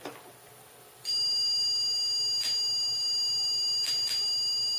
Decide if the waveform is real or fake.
real